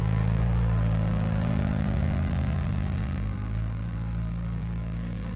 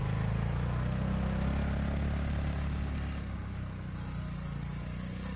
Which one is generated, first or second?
first